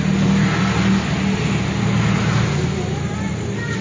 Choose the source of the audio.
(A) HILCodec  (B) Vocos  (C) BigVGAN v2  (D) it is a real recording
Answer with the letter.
D